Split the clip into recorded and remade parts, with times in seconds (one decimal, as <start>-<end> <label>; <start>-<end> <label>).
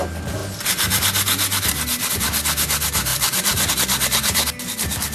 0.0-3.1 recorded; 3.1-3.7 remade; 3.7-5.1 recorded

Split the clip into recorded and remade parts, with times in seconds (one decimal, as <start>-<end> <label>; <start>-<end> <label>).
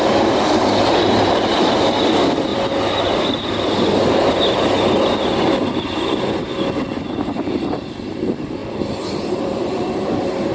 0.0-2.5 remade; 2.5-7.2 recorded; 7.2-8.6 remade; 8.6-9.1 recorded; 9.1-10.5 remade